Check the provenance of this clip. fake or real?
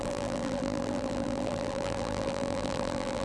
fake